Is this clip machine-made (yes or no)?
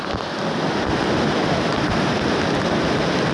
no